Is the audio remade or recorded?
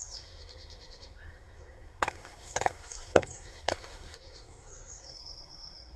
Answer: remade